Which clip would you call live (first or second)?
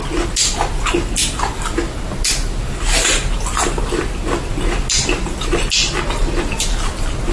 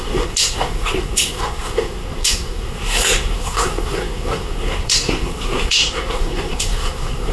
first